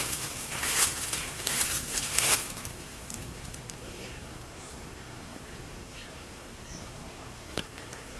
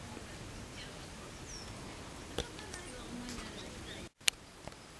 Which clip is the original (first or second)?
second